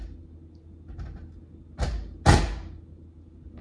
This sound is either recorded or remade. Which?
recorded